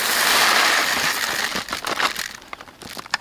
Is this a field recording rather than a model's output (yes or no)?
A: yes